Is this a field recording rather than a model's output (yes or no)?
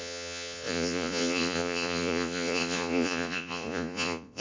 no